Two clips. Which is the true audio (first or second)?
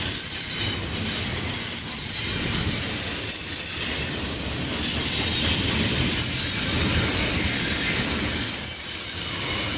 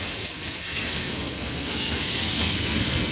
first